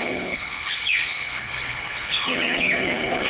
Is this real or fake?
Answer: fake